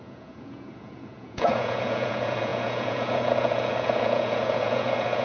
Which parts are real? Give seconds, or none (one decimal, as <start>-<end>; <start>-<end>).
none